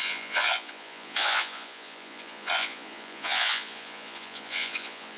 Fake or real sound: fake